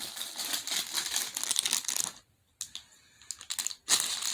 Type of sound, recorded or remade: recorded